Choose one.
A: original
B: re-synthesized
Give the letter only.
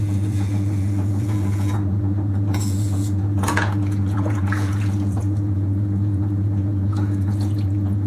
B